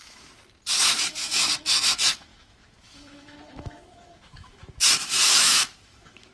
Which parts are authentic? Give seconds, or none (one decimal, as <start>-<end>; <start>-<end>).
0.4-0.9